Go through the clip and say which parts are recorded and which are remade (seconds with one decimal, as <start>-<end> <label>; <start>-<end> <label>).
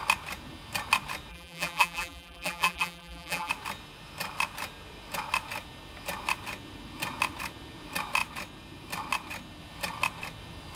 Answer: 0.0-1.3 recorded; 1.3-3.5 remade; 3.5-10.8 recorded